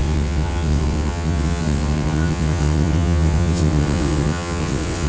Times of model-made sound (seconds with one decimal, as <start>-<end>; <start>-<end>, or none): 0.0-5.1